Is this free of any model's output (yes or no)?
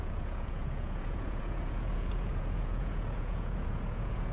no